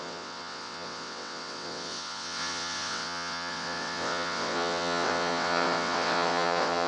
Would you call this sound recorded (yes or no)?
no